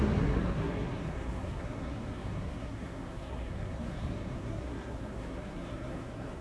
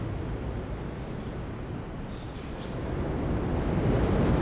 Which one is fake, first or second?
first